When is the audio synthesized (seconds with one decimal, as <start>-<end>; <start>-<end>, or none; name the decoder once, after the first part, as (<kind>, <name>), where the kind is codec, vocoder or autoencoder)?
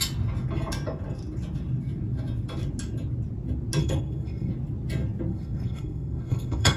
3.8-4.5 (codec, SNAC); 5.3-6.8